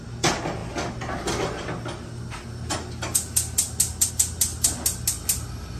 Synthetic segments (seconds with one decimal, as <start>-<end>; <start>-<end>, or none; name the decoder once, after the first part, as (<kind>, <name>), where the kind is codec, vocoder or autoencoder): none